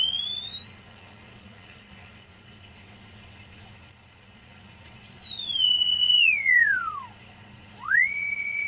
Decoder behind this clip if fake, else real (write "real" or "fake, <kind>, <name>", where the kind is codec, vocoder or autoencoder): fake, vocoder, Vocos